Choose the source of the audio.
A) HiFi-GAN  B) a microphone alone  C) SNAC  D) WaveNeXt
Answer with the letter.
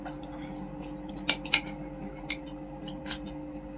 B